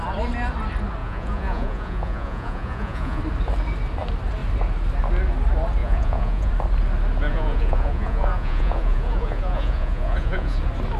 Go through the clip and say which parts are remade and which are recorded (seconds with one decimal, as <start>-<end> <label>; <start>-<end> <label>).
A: 0.0-1.0 recorded; 1.0-3.2 remade; 3.2-5.8 recorded; 5.8-6.5 remade; 6.5-7.3 recorded; 7.3-10.6 remade; 10.6-11.0 recorded